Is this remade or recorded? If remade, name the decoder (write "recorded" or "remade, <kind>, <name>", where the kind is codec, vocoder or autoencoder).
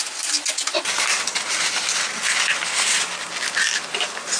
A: recorded